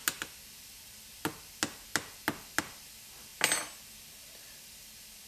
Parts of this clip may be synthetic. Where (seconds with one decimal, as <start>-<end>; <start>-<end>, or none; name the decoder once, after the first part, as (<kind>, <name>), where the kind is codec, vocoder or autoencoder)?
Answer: none